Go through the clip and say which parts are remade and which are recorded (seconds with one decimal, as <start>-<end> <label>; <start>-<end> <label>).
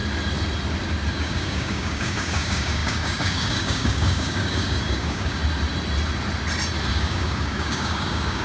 0.0-1.1 recorded; 1.1-5.4 remade; 5.4-6.9 recorded; 6.9-8.4 remade